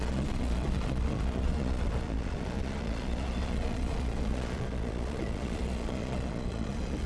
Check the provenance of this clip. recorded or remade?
remade